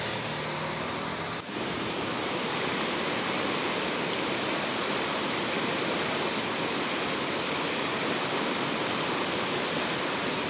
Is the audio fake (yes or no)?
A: no